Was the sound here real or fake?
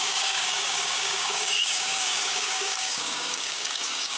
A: fake